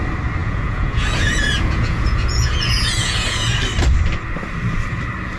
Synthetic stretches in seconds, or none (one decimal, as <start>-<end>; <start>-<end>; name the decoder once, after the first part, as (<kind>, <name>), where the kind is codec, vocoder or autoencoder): 0.4-3.6 (vocoder, Vocos)